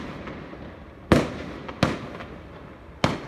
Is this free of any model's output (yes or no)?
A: yes